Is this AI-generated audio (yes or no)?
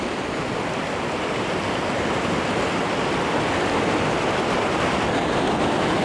no